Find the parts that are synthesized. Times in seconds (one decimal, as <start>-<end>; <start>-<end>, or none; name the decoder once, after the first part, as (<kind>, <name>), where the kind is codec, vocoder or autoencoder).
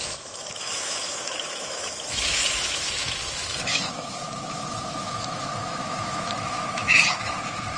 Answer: 0.0-7.8 (autoencoder, DAC-VAE)